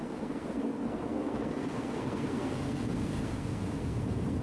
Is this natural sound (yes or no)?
no